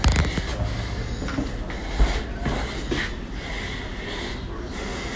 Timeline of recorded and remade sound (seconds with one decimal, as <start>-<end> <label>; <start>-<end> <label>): 0.0-5.2 recorded